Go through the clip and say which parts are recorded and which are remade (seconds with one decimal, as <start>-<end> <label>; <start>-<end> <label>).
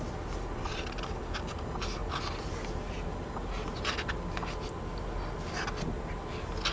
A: 0.0-6.7 recorded